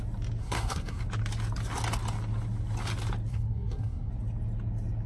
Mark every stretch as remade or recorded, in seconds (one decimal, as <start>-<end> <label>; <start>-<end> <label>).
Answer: 0.0-0.4 recorded; 0.4-1.0 remade; 1.0-3.3 recorded; 3.3-4.1 remade; 4.1-5.1 recorded